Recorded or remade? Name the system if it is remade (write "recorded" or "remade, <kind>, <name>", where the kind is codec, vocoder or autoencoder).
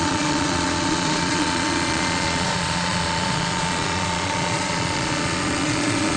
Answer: remade, vocoder, Vocos